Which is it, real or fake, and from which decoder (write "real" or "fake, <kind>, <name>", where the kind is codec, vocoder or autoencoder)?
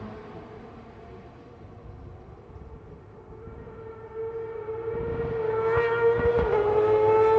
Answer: real